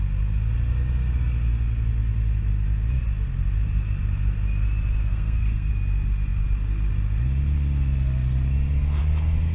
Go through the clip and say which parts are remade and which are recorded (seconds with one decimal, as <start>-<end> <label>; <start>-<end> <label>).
0.0-5.1 recorded; 5.1-5.7 remade; 5.7-9.5 recorded